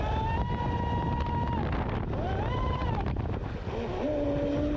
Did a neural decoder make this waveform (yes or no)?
no